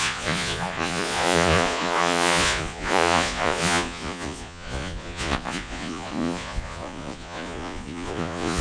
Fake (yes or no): yes